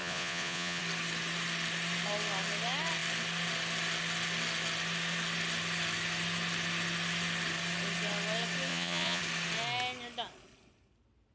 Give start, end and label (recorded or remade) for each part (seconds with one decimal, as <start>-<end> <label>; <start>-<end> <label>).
0.0-0.8 remade; 0.8-8.7 recorded; 8.7-9.2 remade; 9.2-11.3 recorded